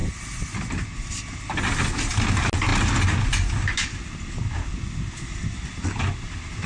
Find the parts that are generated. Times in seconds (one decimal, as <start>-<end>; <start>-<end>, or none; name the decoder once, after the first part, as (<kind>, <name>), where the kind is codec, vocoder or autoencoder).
none